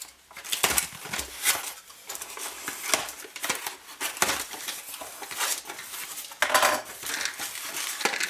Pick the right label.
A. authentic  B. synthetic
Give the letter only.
A